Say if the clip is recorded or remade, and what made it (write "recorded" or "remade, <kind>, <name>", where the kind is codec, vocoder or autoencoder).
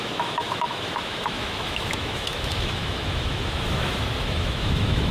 remade, autoencoder, DAC-VAE